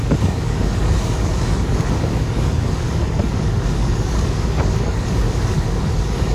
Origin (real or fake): fake